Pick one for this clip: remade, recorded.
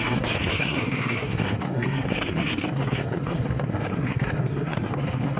remade